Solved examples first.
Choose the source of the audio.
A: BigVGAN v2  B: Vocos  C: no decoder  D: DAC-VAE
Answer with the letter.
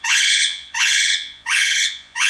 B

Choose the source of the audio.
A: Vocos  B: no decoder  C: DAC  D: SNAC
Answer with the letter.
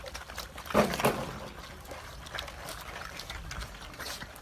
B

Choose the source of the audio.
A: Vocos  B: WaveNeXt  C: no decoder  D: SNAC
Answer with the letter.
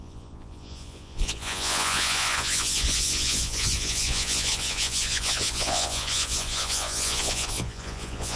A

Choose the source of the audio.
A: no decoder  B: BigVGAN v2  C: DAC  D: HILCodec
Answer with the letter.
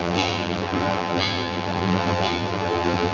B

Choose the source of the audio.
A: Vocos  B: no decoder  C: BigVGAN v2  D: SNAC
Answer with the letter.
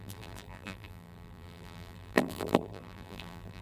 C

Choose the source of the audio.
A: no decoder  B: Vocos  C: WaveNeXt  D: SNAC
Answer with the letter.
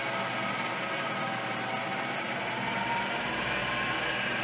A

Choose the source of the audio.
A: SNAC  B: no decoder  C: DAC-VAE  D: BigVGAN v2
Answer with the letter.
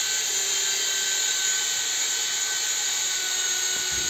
B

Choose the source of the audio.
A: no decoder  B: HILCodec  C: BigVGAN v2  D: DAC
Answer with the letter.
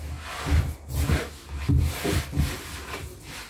A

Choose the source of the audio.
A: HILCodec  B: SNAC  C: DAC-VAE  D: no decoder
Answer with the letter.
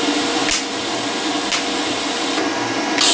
D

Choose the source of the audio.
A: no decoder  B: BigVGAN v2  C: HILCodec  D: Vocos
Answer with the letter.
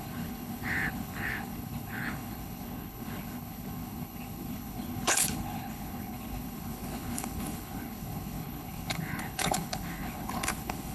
C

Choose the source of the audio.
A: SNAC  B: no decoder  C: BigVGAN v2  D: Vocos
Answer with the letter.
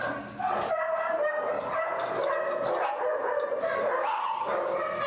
B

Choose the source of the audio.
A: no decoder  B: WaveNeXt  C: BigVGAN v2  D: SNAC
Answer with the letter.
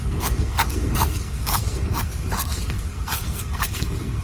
D